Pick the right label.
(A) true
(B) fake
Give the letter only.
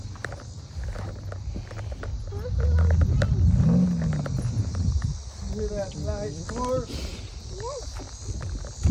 A